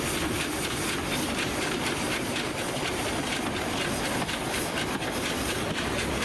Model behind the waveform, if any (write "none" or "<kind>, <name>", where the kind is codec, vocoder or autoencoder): none